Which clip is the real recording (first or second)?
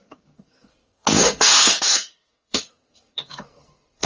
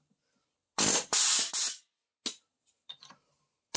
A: second